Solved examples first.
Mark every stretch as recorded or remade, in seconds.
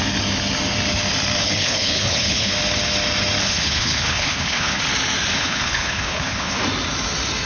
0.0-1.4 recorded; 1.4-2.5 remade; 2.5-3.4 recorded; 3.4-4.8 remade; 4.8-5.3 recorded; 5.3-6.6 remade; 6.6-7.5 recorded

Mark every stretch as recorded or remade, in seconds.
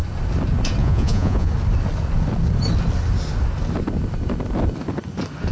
0.0-0.8 recorded; 0.8-1.5 remade; 1.5-5.5 recorded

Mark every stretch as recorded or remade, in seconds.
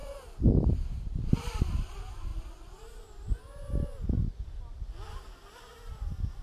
0.0-1.6 remade; 1.6-6.4 recorded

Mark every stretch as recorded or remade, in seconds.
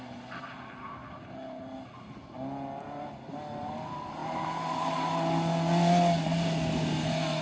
0.0-7.4 recorded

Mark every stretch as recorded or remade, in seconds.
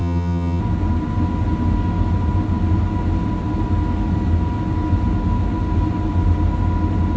0.0-0.6 remade; 0.6-7.2 recorded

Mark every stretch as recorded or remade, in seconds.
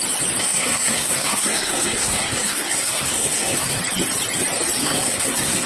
0.0-0.4 recorded; 0.4-3.8 remade; 3.8-4.8 recorded; 4.8-5.7 remade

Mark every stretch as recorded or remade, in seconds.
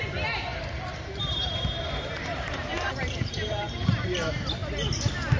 0.0-4.6 remade; 4.6-5.4 recorded